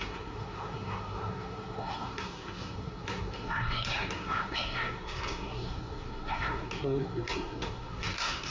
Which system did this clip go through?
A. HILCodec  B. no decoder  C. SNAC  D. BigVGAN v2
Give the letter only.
C